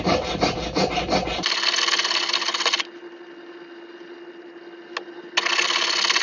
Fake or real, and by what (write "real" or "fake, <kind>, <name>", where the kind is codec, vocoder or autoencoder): real